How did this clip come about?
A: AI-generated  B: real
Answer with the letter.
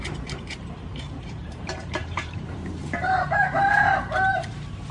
A